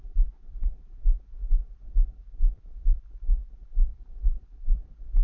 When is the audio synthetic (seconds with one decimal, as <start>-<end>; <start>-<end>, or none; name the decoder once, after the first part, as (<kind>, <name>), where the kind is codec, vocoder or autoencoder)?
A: none